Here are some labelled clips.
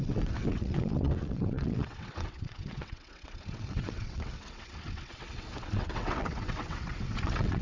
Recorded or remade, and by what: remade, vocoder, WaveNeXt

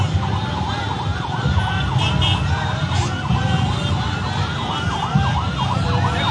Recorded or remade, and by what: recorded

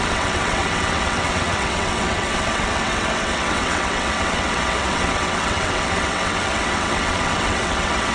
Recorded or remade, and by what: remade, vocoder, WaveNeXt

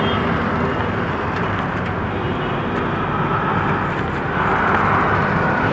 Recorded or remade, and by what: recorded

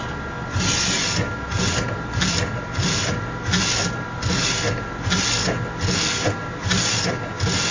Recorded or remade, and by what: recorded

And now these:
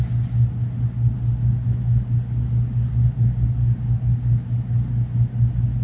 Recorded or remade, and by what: recorded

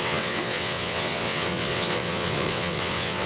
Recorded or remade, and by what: remade, vocoder, WaveNeXt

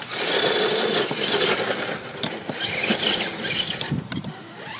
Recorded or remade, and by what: recorded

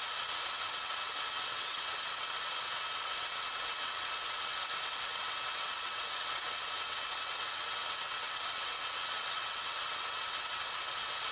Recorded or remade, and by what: remade, vocoder, WaveNeXt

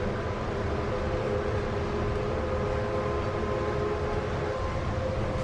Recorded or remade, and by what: recorded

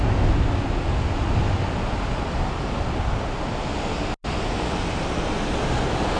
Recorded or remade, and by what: recorded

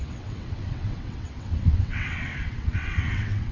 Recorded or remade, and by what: remade, vocoder, WaveNeXt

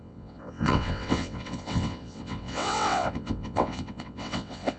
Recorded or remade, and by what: remade, vocoder, WaveNeXt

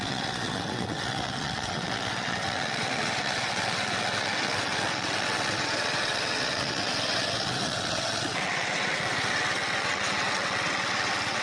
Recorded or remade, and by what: remade, vocoder, WaveNeXt